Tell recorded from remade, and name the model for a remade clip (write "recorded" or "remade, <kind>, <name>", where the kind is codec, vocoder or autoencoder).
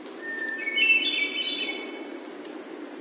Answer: recorded